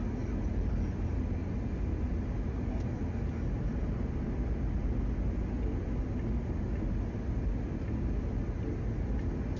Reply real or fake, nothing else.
real